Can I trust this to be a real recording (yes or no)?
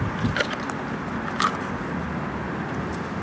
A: yes